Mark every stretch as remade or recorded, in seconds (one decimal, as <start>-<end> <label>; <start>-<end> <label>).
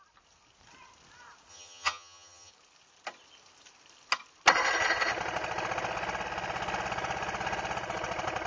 0.0-1.5 recorded; 1.5-2.5 remade; 2.5-8.5 recorded